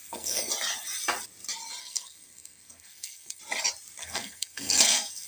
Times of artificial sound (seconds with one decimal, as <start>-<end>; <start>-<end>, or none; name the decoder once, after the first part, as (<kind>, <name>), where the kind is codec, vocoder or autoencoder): 0.0-0.5 (codec, SNAC); 1.8-3.4; 4.0-5.3